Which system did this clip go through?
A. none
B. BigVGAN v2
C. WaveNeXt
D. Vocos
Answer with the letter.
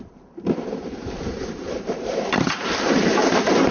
B